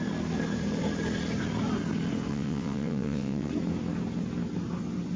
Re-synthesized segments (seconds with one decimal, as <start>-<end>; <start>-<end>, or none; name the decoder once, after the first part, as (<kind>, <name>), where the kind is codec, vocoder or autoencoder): 2.3-3.5 (vocoder, WaveNeXt)